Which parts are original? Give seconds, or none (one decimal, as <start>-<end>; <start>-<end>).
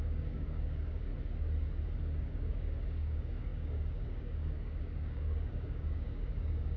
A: 1.1-2.0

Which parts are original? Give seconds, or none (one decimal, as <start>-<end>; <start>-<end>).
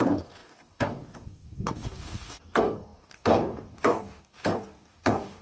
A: none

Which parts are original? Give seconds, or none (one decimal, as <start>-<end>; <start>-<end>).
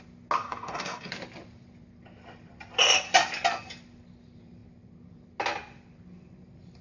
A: 0.0-0.4; 1.1-6.8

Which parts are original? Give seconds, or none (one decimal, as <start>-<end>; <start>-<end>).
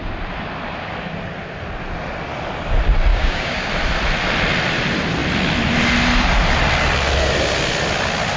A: 0.0-3.1; 3.7-8.4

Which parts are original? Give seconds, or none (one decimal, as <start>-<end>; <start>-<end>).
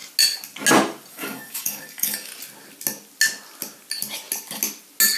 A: 0.0-1.1; 2.3-5.2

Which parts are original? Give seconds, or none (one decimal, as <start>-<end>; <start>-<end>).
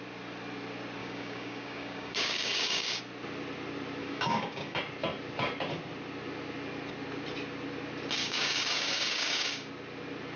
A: 0.0-1.0; 3.0-4.0; 4.8-8.2; 9.7-10.4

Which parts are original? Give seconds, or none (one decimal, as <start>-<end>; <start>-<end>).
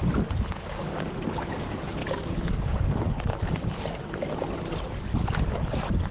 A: 0.9-1.5; 3.3-6.1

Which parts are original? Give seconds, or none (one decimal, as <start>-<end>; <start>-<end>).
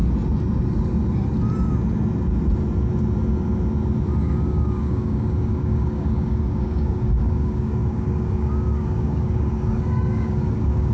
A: 0.0-4.2